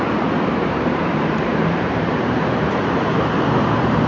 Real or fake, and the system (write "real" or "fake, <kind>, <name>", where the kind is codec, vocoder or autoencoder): fake, vocoder, BigVGAN v2